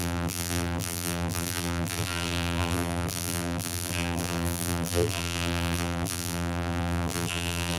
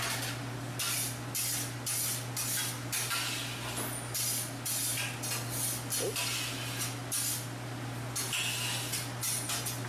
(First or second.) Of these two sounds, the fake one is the first